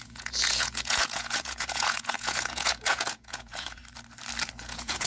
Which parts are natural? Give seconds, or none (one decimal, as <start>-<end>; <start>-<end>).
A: 3.8-4.5